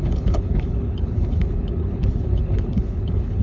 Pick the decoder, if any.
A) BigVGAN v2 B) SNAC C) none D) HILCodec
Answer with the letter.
D